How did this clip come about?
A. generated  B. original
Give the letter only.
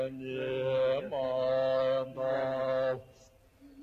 B